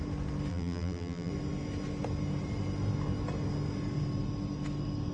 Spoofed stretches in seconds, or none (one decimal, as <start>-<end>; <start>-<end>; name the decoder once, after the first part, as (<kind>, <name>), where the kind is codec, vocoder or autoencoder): 0.5-1.3 (vocoder, BigVGAN v2)